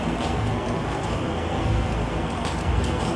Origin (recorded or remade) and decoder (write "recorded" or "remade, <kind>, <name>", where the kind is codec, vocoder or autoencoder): remade, codec, SNAC